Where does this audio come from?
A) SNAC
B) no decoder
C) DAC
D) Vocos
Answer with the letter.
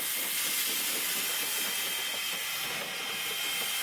B